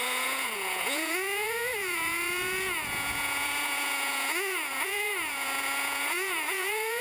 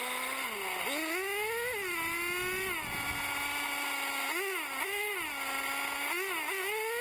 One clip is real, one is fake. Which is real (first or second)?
second